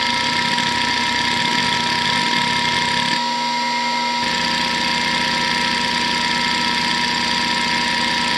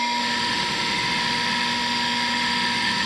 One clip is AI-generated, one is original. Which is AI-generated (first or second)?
second